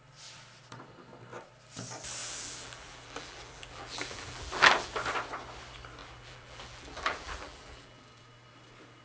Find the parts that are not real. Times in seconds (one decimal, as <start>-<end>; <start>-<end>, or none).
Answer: 2.2-4.9; 6.0-8.2